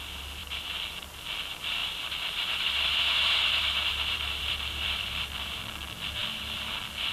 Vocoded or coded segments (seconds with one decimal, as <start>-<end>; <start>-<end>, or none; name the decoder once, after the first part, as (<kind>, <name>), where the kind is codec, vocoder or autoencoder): 0.4-0.9 (vocoder, BigVGAN v2); 1.8-5.6